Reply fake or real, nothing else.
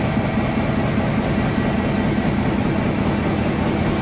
real